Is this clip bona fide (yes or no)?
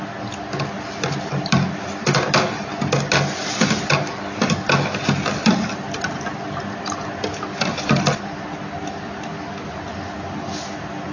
yes